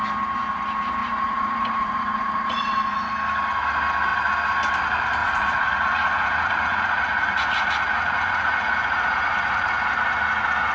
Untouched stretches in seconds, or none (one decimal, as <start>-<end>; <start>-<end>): 0.0-1.0; 3.1-5.2; 9.7-10.7